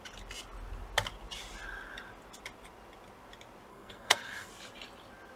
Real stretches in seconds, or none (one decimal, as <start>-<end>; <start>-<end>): 0.0-3.7; 4.5-5.4